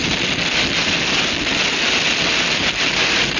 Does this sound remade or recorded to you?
recorded